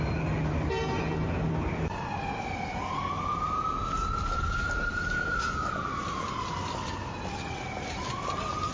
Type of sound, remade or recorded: recorded